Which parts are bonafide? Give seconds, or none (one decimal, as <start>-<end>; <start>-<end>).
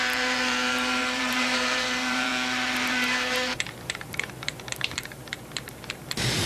2.3-2.9